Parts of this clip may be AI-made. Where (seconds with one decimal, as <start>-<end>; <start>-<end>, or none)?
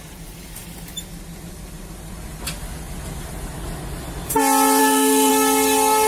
4.8-5.3